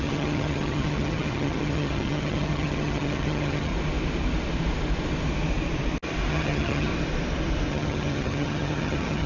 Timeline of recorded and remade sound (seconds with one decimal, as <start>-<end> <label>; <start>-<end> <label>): 0.0-3.7 remade; 3.7-6.3 recorded; 6.3-6.9 remade; 6.9-7.7 recorded; 7.7-9.3 remade